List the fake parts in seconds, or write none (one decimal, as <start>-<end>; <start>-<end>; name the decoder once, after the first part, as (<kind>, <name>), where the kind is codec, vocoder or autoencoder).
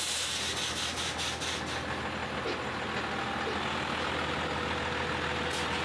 none